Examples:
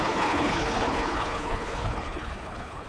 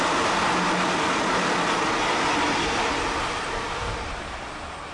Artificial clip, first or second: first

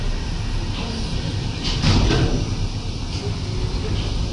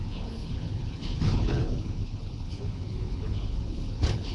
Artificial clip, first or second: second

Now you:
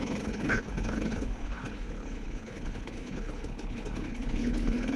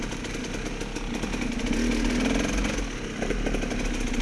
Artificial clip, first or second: first